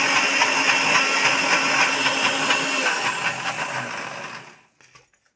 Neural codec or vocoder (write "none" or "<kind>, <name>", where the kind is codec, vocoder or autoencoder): none